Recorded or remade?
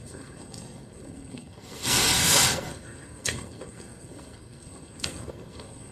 remade